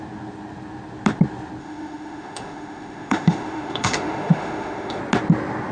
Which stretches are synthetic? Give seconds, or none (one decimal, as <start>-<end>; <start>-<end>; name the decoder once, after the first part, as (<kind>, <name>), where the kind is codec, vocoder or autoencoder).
1.6-5.0 (autoencoder, DAC-VAE)